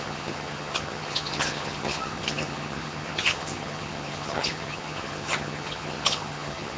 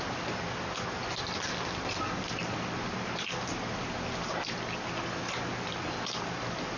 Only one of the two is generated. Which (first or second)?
first